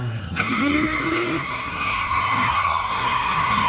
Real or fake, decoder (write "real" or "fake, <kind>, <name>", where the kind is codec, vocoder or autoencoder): fake, codec, SNAC